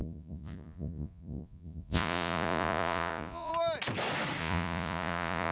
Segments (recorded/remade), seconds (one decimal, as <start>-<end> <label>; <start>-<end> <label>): 0.0-3.5 remade; 3.5-4.4 recorded; 4.4-5.5 remade